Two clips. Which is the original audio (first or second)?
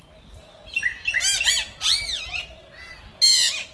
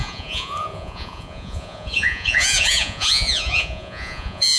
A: first